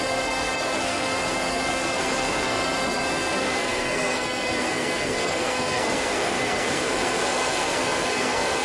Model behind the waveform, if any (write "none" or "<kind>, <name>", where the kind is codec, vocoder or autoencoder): codec, SNAC